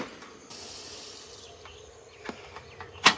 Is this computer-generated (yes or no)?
no